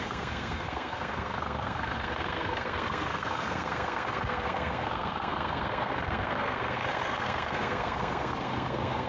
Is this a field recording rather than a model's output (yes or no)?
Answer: no